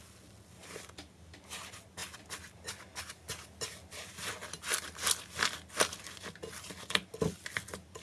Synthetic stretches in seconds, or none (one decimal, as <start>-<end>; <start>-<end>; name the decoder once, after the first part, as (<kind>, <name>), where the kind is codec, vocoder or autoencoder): none